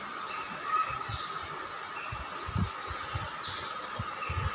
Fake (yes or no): no